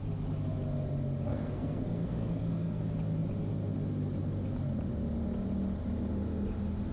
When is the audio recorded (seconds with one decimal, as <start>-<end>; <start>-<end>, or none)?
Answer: 0.0-1.3; 2.8-6.9